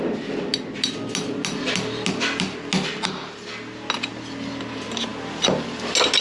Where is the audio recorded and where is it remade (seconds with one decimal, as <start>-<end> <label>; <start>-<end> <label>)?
0.0-6.2 recorded